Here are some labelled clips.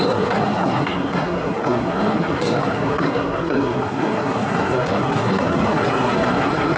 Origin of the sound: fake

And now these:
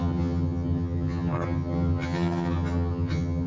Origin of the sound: fake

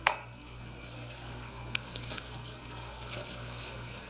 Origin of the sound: fake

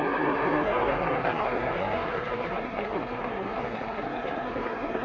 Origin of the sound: fake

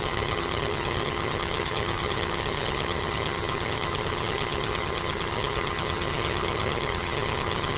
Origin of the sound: fake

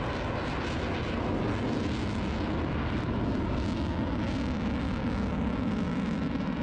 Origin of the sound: real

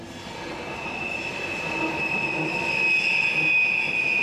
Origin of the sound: real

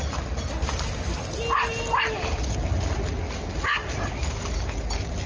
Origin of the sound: real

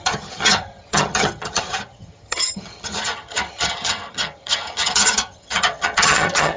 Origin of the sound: fake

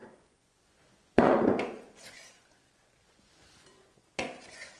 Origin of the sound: fake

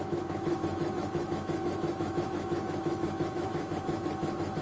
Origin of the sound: fake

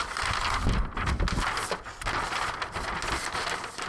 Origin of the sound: real